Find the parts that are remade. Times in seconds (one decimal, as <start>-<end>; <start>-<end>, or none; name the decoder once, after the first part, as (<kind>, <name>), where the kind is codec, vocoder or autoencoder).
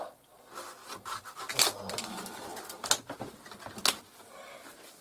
none